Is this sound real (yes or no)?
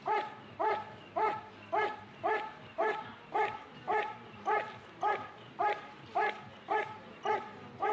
yes